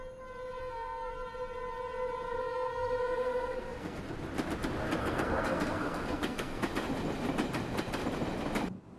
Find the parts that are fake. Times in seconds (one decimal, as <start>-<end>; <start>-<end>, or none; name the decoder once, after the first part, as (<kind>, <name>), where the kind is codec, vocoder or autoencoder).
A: 0.6-1.1 (codec, SNAC); 2.4-4.0; 5.0-6.7

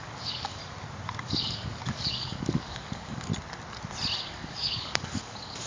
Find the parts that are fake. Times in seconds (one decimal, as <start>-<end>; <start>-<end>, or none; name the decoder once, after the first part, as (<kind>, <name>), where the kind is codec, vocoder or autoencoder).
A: 0.0-0.6 (codec, DAC); 1.2-3.3; 4.2-5.7

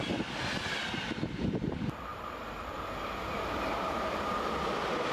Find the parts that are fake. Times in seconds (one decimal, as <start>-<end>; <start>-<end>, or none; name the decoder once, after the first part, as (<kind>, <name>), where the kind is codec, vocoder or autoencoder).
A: 2.1-4.3 (vocoder, BigVGAN v2)

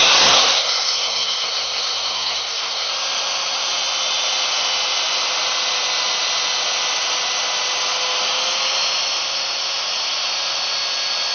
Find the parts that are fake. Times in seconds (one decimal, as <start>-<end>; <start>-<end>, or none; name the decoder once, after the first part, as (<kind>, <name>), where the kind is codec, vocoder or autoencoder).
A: 0.0-2.9 (codec, SNAC)